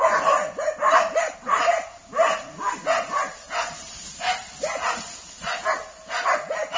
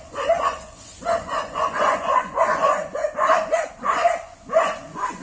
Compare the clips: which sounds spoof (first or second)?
second